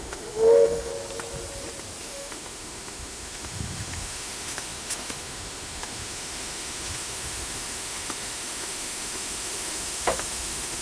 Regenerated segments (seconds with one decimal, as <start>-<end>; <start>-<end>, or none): 0.0-0.9; 2.0-10.8